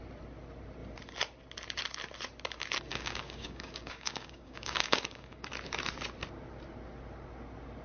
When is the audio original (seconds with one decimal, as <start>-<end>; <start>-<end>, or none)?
0.0-2.9; 5.5-7.8

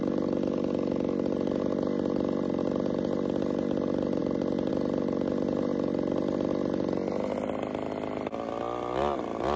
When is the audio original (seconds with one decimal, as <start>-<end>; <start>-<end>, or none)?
0.0-9.6

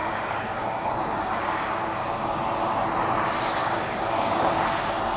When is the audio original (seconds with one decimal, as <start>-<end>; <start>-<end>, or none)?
2.4-3.6; 4.5-5.2

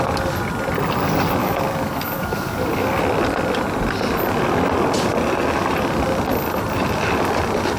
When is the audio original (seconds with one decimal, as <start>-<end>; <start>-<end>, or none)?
0.0-1.4; 3.0-7.8

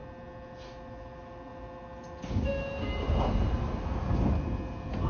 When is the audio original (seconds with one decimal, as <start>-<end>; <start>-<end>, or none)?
0.0-5.1

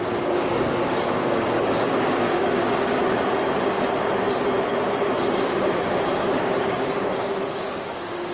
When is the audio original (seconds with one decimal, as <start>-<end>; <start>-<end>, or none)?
3.0-5.3

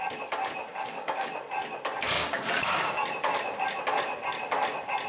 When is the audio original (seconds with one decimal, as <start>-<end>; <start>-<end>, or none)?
0.0-0.7; 1.3-2.2; 2.9-5.1